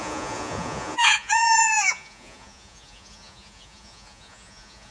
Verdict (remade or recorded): remade